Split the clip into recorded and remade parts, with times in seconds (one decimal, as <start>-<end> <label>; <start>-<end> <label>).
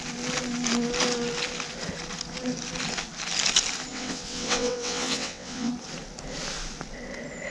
0.0-3.9 recorded; 3.9-5.7 remade; 5.7-7.5 recorded